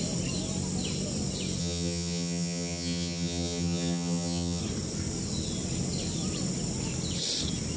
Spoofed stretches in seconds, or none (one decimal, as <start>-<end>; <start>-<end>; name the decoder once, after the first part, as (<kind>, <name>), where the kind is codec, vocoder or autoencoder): 1.6-4.6 (vocoder, HiFi-GAN)